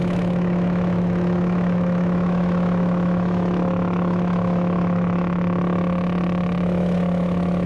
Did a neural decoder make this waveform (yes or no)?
yes